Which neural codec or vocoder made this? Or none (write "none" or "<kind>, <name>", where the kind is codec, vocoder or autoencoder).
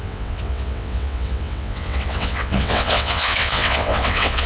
vocoder, WaveNeXt